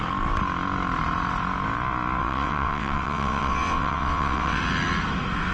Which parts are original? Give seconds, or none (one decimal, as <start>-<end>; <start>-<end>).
0.0-2.2; 4.6-5.5